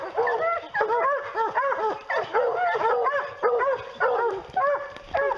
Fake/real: real